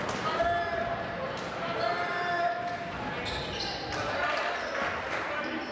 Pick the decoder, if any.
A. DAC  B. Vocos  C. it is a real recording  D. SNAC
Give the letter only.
C